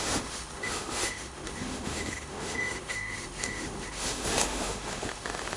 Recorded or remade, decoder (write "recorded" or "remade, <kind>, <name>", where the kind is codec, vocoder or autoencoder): remade, autoencoder, DAC-VAE